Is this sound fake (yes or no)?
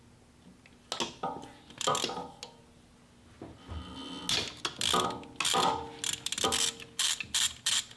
no